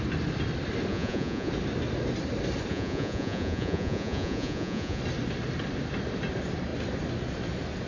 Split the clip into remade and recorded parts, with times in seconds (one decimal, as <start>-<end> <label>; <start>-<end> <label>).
0.0-0.9 recorded; 0.9-1.5 remade; 1.5-2.7 recorded; 2.7-5.0 remade; 5.0-7.9 recorded